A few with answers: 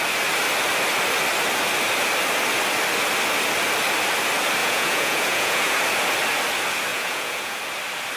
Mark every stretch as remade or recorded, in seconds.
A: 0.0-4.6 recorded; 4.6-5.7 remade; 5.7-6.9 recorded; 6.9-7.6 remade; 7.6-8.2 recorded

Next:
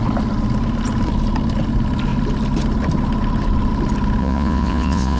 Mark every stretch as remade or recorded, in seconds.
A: 0.0-4.2 recorded; 4.2-5.2 remade